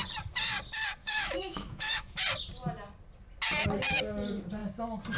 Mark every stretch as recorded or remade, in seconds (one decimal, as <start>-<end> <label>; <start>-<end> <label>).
0.0-1.0 recorded; 1.0-2.2 remade; 2.2-5.2 recorded

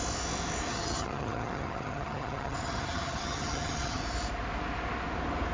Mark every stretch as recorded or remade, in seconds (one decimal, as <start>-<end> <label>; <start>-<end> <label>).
0.0-0.7 recorded; 0.7-4.0 remade; 4.0-5.5 recorded